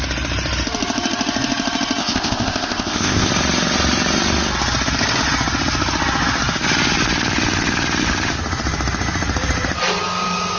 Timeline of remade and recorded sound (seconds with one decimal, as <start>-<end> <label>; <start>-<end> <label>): 0.0-2.0 recorded; 2.0-3.3 remade; 3.3-10.6 recorded